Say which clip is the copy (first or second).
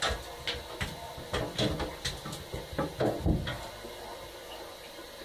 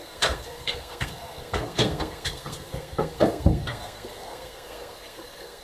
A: second